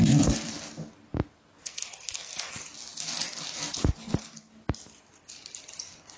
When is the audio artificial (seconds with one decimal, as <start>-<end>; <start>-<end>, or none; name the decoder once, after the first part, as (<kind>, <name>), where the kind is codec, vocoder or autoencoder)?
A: 1.6-2.6 (codec, SNAC); 3.9-4.5